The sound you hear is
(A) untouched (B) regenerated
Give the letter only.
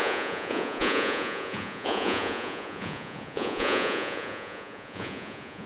B